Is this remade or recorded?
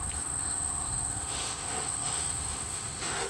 remade